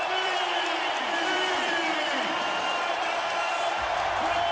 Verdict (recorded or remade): remade